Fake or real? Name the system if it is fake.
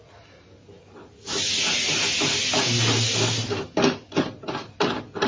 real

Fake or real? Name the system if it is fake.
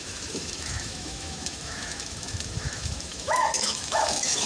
fake, autoencoder, DAC-VAE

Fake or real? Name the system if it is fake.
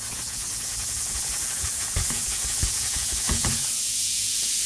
fake, vocoder, Vocos